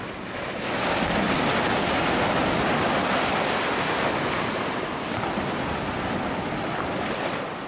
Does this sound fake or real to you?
real